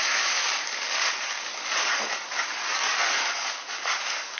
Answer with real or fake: fake